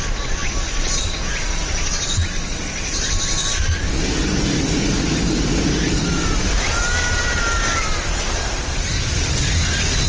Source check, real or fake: real